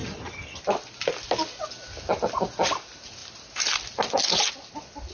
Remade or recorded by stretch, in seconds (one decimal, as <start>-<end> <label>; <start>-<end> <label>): 0.0-0.6 remade; 0.6-5.1 recorded